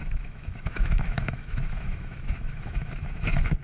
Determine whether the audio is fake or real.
fake